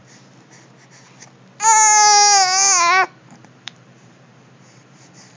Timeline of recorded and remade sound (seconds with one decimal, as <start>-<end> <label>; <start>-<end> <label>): 0.0-3.2 recorded; 3.2-5.4 remade